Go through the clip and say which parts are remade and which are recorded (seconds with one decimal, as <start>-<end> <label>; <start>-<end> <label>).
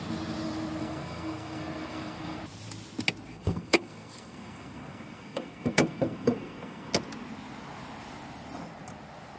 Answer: 0.0-0.8 recorded; 0.8-2.4 remade; 2.4-3.3 recorded; 3.3-6.9 remade; 6.9-9.4 recorded